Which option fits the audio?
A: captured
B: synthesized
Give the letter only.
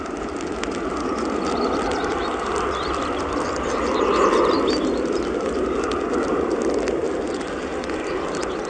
A